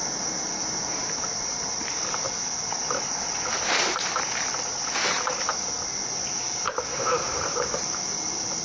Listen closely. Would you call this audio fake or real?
real